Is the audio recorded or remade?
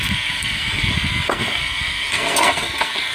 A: remade